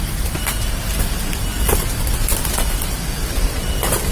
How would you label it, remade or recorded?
recorded